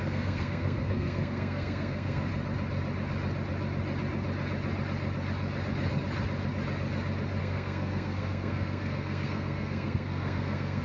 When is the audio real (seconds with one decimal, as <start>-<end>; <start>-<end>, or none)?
2.3-7.4